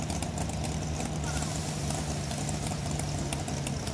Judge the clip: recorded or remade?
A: recorded